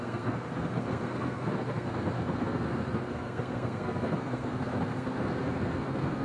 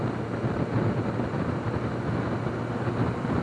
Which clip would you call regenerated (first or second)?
first